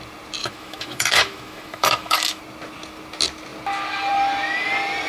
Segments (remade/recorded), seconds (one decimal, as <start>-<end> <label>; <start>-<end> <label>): 0.0-0.4 recorded; 0.4-2.4 remade; 2.4-5.1 recorded